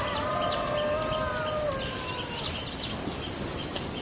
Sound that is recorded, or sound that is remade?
recorded